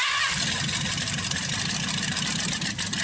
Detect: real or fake real